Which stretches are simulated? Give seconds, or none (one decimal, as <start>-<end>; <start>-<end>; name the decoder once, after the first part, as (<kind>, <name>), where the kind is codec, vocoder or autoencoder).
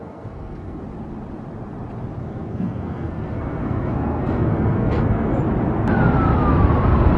0.0-0.8 (codec, SNAC); 2.2-5.4